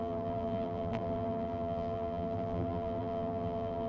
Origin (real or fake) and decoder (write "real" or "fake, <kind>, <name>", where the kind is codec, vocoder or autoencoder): fake, vocoder, BigVGAN v2